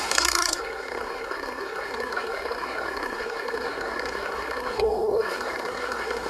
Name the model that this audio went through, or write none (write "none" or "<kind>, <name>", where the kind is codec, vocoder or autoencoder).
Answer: codec, SNAC